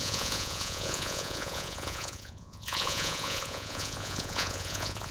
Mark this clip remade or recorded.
remade